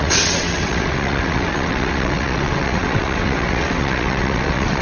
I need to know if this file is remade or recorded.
remade